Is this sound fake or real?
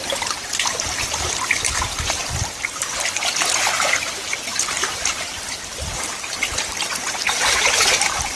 real